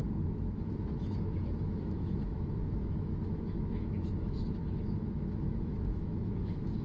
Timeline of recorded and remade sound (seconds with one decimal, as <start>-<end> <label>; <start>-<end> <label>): 0.0-6.8 remade